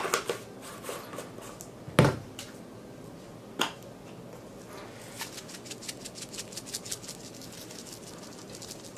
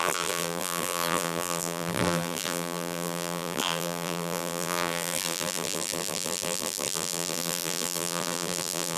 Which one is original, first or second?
first